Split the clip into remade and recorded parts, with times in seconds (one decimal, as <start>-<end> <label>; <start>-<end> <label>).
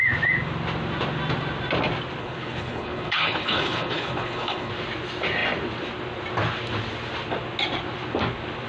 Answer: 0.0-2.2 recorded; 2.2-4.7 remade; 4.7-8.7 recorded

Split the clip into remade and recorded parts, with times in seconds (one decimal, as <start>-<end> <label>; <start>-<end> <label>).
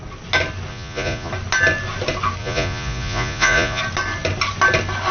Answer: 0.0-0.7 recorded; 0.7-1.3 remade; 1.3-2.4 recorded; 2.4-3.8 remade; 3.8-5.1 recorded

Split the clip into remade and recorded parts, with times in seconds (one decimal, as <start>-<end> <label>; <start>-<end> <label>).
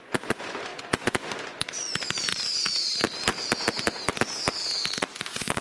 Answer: 0.0-2.7 remade; 2.7-4.9 recorded; 4.9-5.6 remade